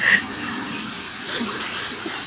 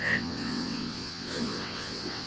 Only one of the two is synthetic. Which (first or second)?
second